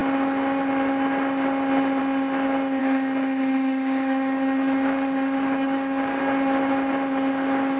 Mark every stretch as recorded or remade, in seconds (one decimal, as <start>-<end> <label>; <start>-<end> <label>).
0.0-2.8 recorded; 2.8-6.2 remade; 6.2-7.8 recorded